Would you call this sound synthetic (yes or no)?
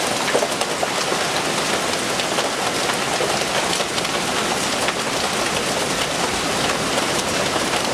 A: no